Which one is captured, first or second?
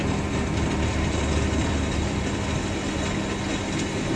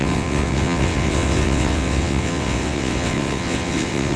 first